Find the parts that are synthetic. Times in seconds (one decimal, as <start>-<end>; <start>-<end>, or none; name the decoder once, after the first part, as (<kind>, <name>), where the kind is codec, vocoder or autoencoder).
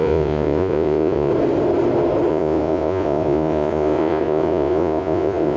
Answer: 0.0-1.3 (vocoder, Vocos); 2.3-5.6